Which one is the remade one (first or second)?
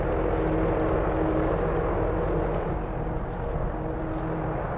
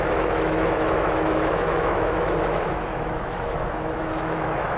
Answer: second